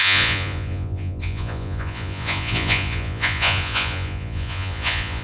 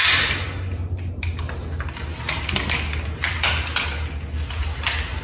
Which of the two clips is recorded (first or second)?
second